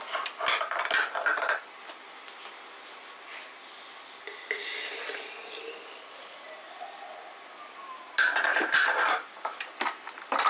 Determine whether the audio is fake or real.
real